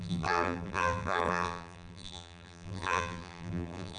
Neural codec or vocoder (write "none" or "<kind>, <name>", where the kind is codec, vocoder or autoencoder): vocoder, BigVGAN v2